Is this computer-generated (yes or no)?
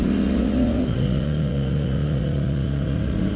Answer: yes